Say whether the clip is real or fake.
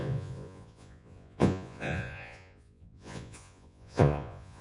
fake